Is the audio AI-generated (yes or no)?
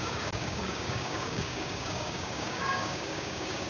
yes